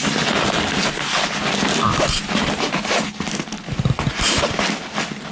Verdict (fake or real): real